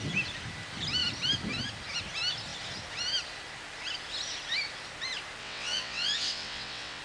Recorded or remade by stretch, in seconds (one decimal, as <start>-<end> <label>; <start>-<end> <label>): 0.0-5.4 recorded; 5.4-7.0 remade